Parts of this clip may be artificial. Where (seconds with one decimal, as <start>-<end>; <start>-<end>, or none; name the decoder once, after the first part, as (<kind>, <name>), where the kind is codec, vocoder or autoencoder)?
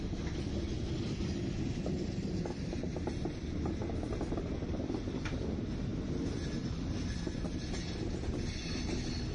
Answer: none